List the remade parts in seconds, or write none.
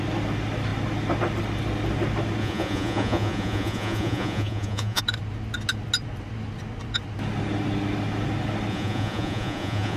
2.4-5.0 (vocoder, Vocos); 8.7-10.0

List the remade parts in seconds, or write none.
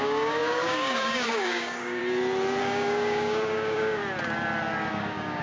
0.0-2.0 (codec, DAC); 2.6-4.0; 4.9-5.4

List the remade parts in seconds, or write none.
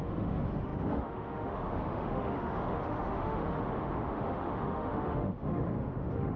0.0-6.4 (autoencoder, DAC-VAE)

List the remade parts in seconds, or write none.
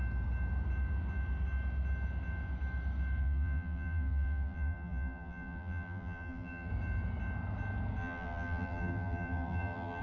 3.2-6.7 (vocoder, BigVGAN v2); 8.0-10.0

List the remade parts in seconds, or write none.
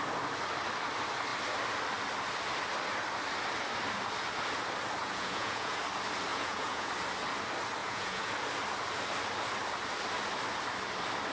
5.0-5.8 (vocoder, Vocos); 6.3-6.9; 7.8-8.3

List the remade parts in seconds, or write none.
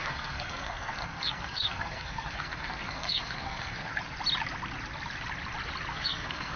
0.0-3.9 (codec, SNAC); 5.9-6.6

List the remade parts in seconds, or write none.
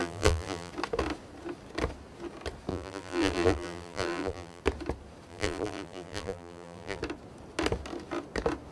0.0-0.7 (vocoder, BigVGAN v2); 2.7-4.6; 5.3-7.0